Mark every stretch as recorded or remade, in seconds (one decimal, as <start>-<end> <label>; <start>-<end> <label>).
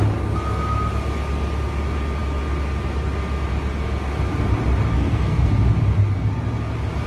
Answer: 0.0-4.9 recorded; 4.9-5.5 remade; 5.5-7.1 recorded